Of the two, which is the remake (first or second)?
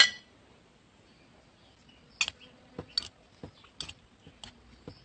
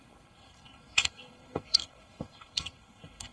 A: second